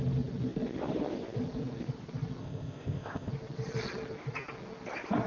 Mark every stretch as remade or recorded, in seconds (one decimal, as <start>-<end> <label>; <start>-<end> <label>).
0.0-2.4 recorded; 2.4-3.3 remade; 3.3-5.3 recorded